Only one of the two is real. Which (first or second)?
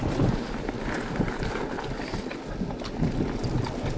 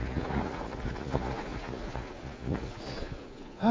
first